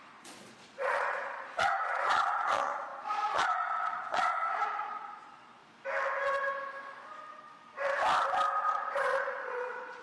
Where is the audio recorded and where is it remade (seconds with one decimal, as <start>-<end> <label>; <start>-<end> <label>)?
0.0-5.6 remade; 5.6-8.6 recorded; 8.6-10.0 remade